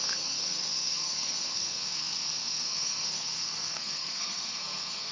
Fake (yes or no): yes